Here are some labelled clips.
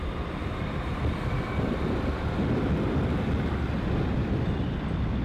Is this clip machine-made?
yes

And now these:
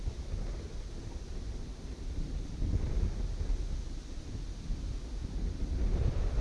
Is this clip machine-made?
no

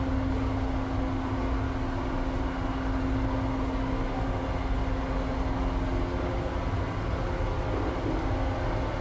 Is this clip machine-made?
no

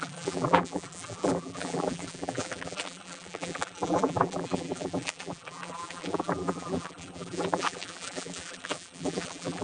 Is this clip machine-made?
yes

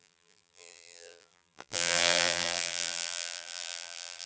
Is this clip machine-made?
yes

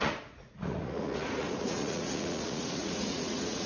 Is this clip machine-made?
yes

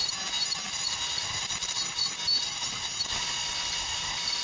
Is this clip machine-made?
no